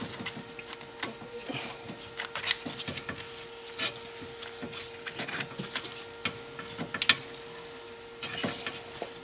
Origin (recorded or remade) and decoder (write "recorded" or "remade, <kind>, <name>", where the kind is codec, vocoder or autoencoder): recorded